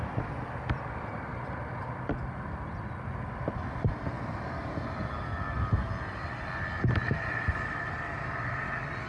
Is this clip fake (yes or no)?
no